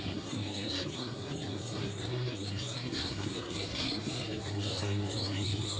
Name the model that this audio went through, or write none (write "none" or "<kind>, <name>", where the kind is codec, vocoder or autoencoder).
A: codec, SNAC